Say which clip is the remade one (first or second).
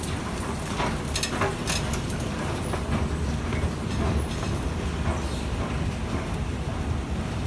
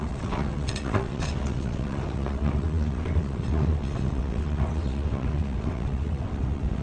second